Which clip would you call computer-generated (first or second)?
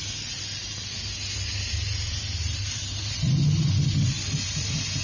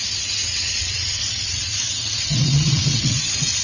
second